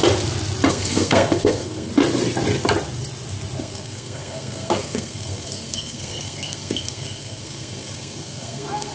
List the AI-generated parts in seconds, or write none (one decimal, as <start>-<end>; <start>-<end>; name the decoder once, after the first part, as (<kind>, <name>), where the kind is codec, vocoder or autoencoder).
0.7-1.9 (codec, SNAC); 3.6-8.9